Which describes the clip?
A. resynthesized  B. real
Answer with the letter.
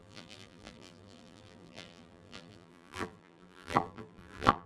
A